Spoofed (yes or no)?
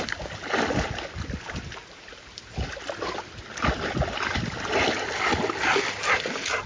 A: no